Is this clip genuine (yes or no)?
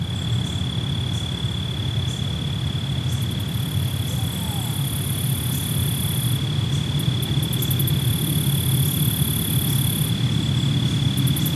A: yes